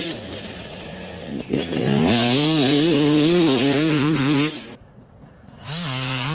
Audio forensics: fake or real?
fake